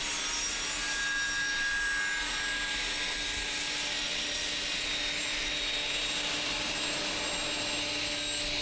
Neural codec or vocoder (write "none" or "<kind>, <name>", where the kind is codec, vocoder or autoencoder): none